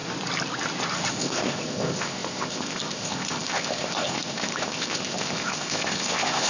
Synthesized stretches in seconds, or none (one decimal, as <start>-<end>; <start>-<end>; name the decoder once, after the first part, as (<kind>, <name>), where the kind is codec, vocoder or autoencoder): 1.1-6.5 (codec, ZipCodec)